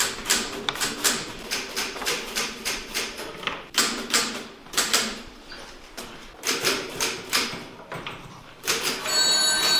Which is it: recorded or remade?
remade